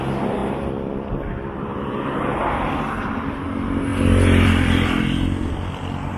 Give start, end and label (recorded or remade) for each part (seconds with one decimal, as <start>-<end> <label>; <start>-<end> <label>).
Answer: 0.0-0.4 recorded; 0.4-1.1 remade; 1.1-1.7 recorded; 1.7-3.3 remade; 3.3-3.9 recorded; 3.9-5.0 remade; 5.0-6.2 recorded